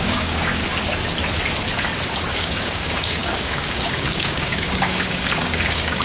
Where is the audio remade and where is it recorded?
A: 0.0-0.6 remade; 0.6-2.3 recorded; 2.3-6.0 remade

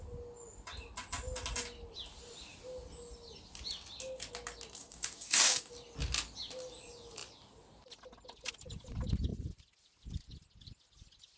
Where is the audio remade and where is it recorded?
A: 0.0-4.8 recorded; 4.8-5.7 remade; 5.7-11.4 recorded

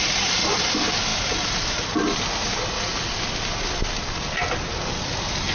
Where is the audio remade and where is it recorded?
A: 0.0-5.5 recorded

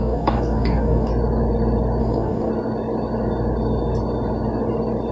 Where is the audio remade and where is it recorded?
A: 0.0-1.1 remade; 1.1-2.0 recorded; 2.0-2.5 remade; 2.5-5.1 recorded